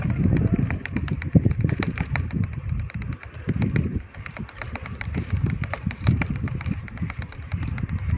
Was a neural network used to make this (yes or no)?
yes